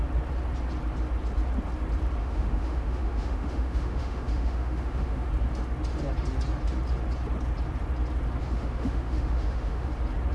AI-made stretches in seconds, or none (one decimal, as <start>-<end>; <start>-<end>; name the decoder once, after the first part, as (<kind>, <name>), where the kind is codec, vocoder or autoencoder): 2.2-5.3 (autoencoder, DAC-VAE); 8.4-9.9